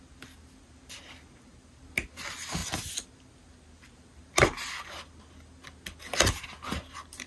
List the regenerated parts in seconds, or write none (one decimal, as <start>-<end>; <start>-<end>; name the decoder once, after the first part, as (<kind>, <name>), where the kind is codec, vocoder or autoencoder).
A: none